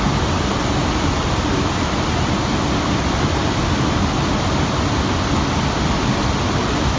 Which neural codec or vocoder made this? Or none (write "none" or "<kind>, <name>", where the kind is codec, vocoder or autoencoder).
none